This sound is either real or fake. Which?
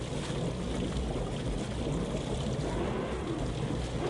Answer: real